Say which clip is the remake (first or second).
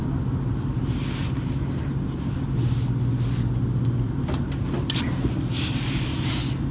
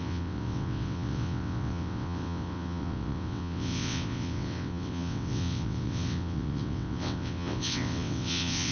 second